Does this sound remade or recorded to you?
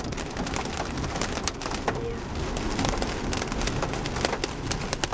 recorded